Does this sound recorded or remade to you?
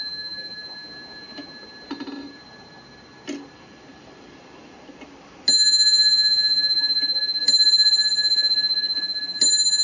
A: recorded